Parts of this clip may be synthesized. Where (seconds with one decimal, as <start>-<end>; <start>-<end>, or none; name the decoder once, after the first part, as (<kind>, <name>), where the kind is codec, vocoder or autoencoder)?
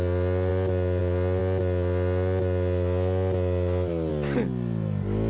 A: none